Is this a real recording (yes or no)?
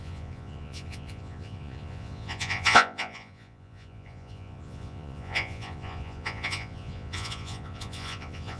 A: no